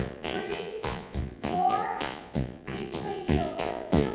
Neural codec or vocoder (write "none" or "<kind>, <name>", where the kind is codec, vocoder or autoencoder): vocoder, Vocos